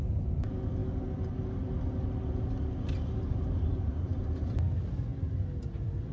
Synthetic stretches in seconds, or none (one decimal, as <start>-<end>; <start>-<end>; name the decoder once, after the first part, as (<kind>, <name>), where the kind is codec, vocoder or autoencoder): none